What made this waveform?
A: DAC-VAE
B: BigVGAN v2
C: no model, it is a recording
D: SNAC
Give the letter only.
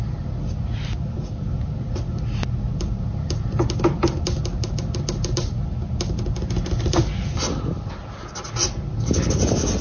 C